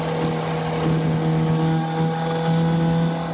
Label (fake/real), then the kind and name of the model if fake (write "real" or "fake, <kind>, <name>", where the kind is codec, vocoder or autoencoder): real